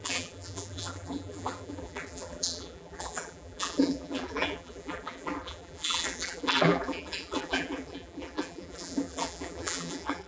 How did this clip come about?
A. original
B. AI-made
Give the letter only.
B